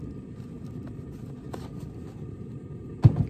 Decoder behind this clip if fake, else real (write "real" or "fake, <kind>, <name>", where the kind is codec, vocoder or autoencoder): real